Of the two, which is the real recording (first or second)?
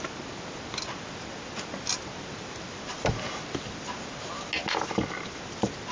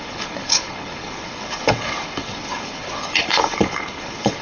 first